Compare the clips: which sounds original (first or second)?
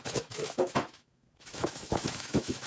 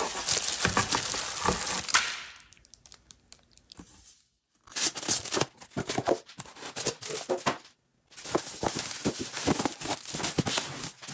second